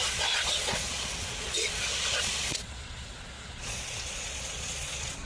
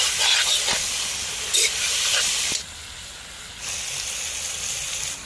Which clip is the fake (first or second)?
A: first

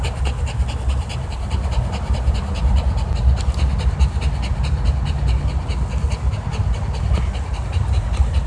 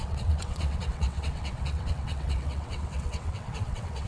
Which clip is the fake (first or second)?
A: second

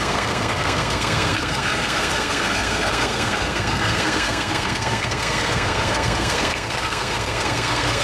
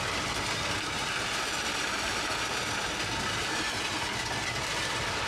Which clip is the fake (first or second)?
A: first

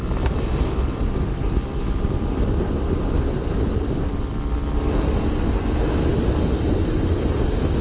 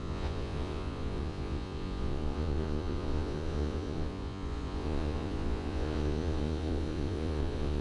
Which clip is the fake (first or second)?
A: second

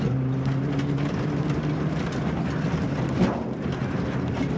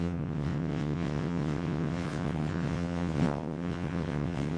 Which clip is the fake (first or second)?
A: second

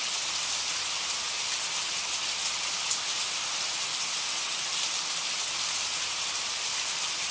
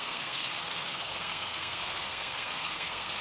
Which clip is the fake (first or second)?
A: second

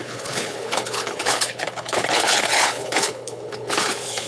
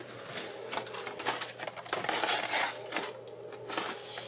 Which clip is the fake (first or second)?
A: first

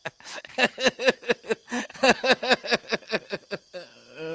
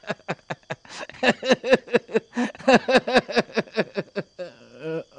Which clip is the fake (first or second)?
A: first